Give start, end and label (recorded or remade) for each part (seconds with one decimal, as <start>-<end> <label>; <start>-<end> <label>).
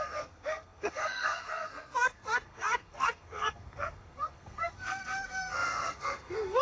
0.0-6.6 remade